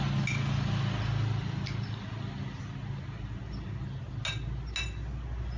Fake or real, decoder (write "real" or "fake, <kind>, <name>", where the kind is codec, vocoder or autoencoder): real